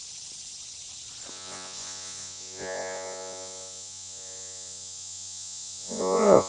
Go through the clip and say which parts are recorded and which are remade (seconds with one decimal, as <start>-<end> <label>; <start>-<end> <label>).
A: 0.0-1.3 recorded; 1.3-6.5 remade